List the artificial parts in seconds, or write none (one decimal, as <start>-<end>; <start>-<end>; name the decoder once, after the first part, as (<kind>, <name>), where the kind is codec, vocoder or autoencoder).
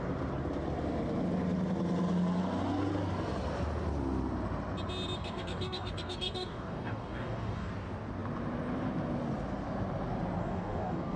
5.2-7.7 (codec, DAC); 10.4-11.2